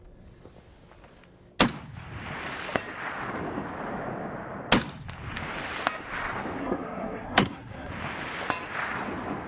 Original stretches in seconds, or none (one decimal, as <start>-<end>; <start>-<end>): 0.0-6.6; 7.9-9.5